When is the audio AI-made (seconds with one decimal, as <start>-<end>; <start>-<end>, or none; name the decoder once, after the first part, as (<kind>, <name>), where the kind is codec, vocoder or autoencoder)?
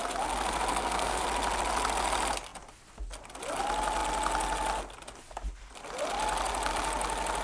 0.7-1.2 (codec, SNAC)